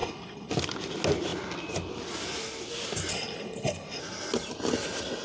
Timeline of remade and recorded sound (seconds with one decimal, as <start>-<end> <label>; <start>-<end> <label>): 0.0-0.5 remade; 0.5-3.1 recorded; 3.1-4.0 remade; 4.0-5.2 recorded